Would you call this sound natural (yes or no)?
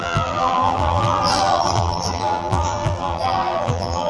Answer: no